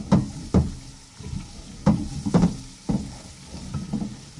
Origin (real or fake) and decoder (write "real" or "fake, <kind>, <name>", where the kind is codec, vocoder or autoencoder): real